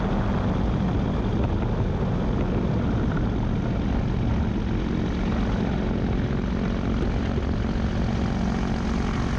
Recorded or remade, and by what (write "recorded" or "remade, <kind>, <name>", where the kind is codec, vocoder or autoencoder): recorded